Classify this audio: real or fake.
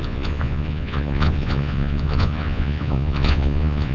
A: fake